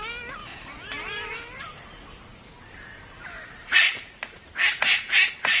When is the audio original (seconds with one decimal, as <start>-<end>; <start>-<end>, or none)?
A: 0.0-0.4; 1.8-2.3; 4.7-5.6